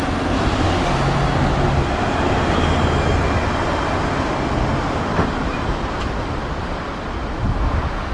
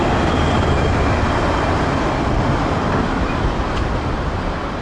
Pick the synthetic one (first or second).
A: second